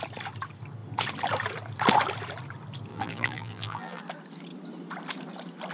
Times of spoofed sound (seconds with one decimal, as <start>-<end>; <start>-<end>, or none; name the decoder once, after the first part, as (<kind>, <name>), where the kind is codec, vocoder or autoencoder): 2.9-4.0 (vocoder, BigVGAN v2)